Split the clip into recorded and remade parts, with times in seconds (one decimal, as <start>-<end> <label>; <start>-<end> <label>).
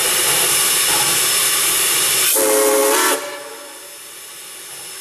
0.0-0.8 remade; 0.8-1.4 recorded; 1.4-2.0 remade; 2.0-5.0 recorded